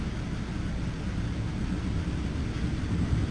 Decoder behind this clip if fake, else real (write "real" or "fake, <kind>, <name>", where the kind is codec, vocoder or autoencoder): real